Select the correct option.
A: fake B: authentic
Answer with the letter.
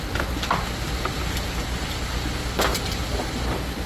B